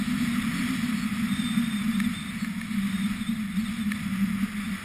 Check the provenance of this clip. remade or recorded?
recorded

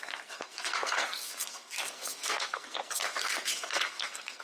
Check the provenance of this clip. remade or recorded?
remade